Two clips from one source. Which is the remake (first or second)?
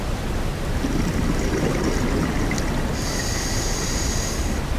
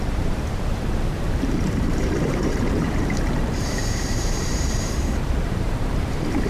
second